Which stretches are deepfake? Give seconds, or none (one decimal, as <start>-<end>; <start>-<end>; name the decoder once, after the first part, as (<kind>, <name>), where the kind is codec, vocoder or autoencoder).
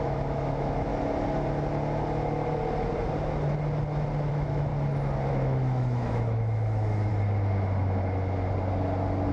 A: 0.0-0.9 (autoencoder, DAC-VAE); 4.3-4.7; 5.3-7.1